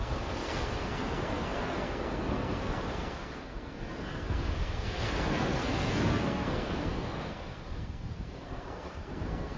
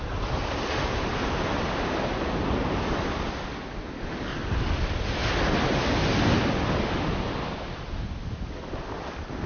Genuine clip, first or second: second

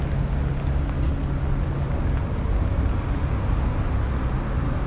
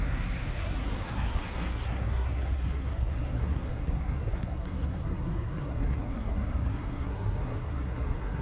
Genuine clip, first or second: first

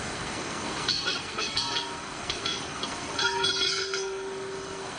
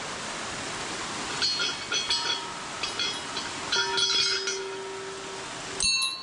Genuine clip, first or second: second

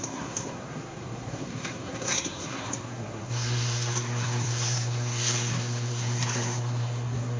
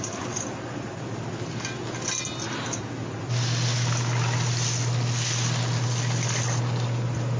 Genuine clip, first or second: second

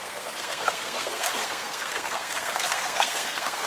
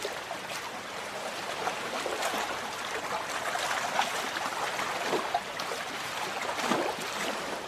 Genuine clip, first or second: second